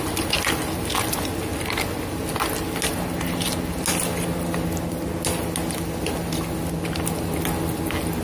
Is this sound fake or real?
real